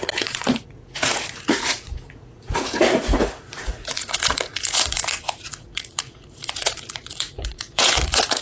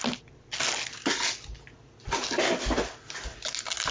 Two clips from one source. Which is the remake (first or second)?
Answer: first